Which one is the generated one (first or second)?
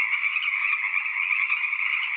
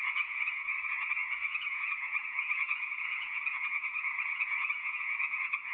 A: second